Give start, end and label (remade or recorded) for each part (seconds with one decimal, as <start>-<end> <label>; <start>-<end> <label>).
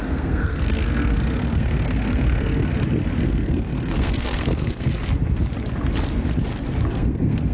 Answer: 0.0-2.7 remade; 2.7-3.3 recorded; 3.3-5.0 remade; 5.0-6.9 recorded; 6.9-7.5 remade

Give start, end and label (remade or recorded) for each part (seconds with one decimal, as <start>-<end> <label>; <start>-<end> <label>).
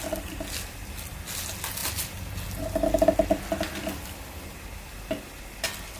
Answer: 0.0-6.0 recorded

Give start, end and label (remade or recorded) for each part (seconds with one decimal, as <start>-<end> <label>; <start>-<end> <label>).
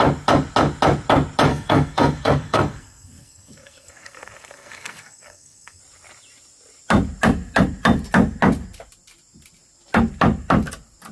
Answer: 0.0-1.5 recorded; 1.5-5.8 remade; 5.8-11.1 recorded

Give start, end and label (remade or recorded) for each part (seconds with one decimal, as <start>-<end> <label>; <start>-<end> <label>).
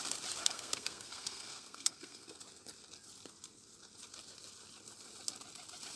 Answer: 0.0-0.4 recorded; 0.4-2.4 remade; 2.4-6.0 recorded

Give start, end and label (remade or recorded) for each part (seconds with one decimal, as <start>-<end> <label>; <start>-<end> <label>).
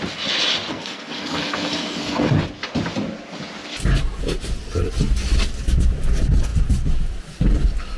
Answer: 0.0-0.7 recorded; 0.7-2.3 remade; 2.3-8.0 recorded